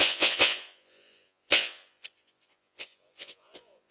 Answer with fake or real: fake